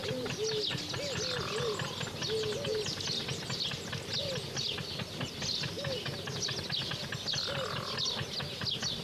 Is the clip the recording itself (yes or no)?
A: yes